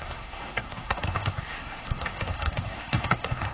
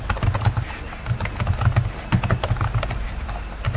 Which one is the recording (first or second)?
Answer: second